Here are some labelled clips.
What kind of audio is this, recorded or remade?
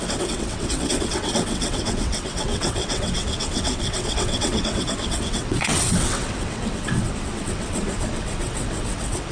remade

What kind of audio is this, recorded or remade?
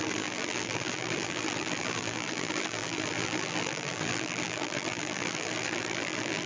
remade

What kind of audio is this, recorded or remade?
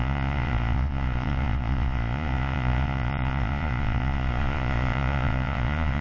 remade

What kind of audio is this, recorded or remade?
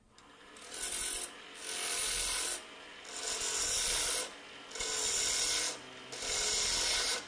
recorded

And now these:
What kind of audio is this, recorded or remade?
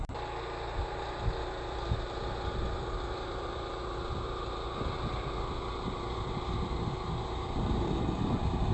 recorded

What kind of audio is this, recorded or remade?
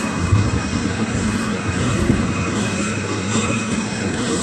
remade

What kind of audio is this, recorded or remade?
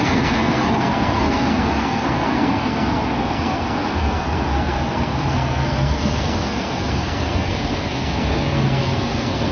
remade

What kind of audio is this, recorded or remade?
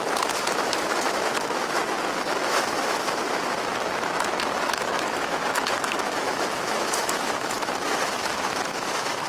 remade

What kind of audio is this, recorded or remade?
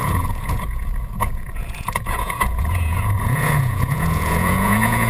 remade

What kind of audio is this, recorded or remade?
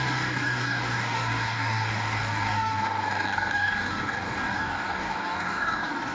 remade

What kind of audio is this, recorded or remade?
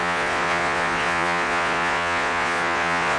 remade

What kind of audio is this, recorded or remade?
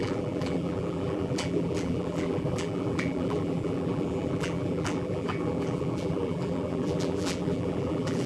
remade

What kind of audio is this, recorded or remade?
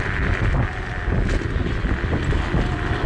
recorded